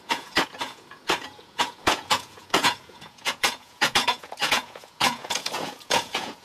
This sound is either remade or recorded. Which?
remade